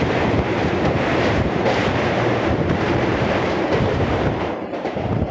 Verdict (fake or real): fake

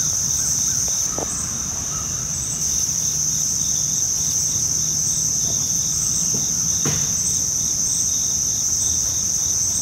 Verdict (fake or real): real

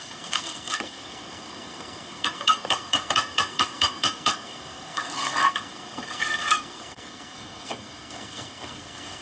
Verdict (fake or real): fake